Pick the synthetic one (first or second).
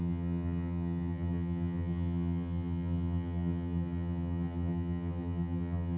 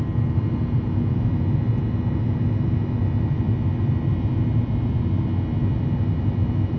first